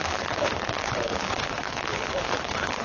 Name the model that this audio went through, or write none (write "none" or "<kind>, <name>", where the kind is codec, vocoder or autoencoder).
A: codec, HILCodec